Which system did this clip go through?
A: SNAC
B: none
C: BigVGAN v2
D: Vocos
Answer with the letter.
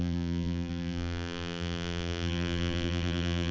C